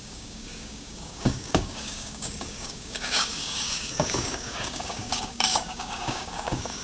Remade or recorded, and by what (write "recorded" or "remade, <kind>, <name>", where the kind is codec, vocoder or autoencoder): remade, codec, DAC